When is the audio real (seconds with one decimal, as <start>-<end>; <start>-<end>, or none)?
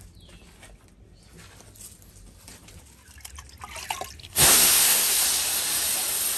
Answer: 0.0-4.2; 5.2-6.4